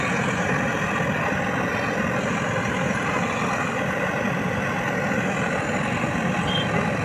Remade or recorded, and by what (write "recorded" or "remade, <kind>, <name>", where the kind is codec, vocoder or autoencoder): recorded